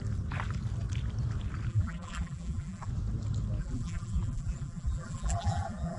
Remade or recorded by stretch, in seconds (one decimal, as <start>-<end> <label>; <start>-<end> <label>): 0.0-1.7 recorded; 1.7-2.9 remade; 2.9-3.6 recorded; 3.6-6.0 remade